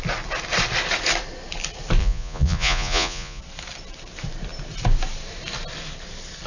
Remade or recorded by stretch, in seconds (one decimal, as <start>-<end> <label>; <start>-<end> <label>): 0.0-2.0 recorded; 2.0-3.4 remade; 3.4-6.5 recorded